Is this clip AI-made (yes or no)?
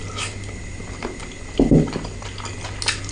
no